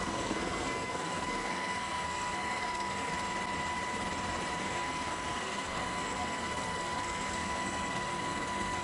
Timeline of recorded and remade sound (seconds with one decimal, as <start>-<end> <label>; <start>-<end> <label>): 0.0-3.1 remade; 3.1-4.6 recorded; 4.6-8.8 remade